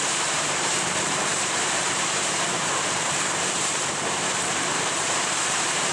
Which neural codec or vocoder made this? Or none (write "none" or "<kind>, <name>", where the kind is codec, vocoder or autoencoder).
vocoder, BigVGAN v2